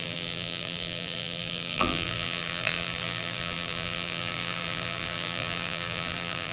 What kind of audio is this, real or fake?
fake